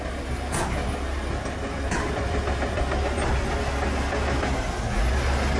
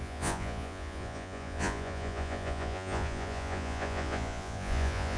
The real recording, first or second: first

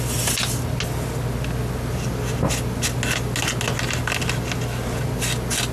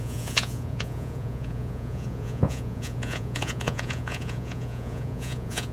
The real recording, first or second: first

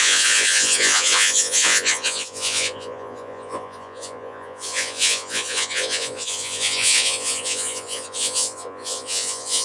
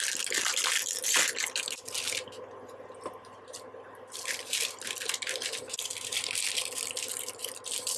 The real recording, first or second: second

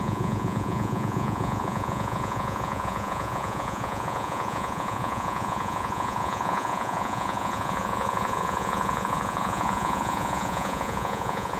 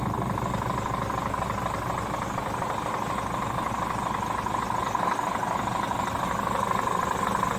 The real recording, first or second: second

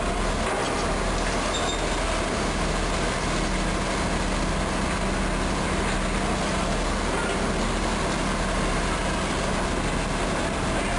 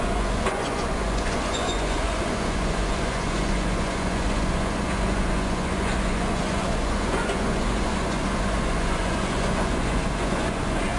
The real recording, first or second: first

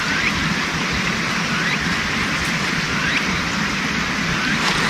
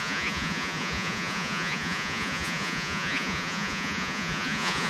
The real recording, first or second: first